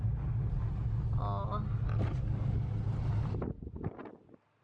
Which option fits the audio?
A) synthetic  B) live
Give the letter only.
B